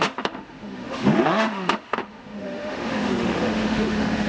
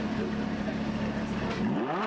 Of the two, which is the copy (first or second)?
first